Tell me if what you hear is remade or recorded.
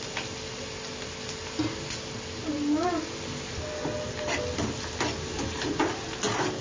recorded